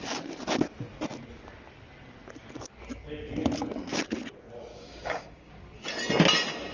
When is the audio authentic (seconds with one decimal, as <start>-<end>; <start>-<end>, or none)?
0.0-4.7; 5.5-6.7